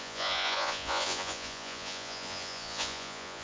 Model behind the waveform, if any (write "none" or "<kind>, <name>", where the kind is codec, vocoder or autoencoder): vocoder, Vocos